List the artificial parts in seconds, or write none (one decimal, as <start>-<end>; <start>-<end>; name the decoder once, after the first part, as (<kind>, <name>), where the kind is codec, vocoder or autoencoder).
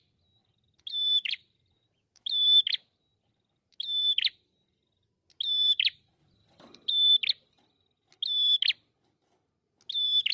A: none